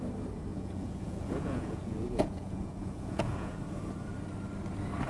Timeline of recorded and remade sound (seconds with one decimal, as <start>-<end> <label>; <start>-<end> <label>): 0.0-0.5 recorded; 0.5-3.6 remade; 3.6-5.1 recorded